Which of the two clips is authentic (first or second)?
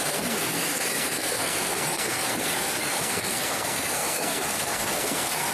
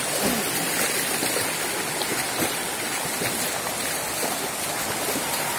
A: second